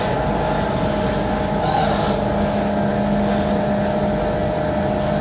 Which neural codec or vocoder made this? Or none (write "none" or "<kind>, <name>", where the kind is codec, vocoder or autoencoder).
none